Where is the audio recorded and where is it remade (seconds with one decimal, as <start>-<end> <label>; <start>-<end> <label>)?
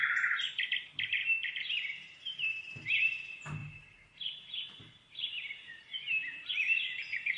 0.0-1.2 recorded; 1.2-2.6 remade; 2.6-3.6 recorded; 3.6-6.5 remade; 6.5-7.4 recorded